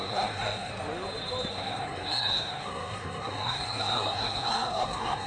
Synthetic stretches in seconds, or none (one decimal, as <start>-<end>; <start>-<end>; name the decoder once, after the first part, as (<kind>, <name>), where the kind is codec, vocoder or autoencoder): 0.0-0.7 (codec, SNAC); 1.5-5.3